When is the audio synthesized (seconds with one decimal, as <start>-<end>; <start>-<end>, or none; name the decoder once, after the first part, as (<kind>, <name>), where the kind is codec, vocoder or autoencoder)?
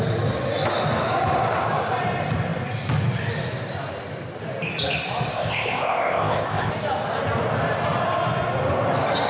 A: 5.3-6.7 (codec, ZipCodec)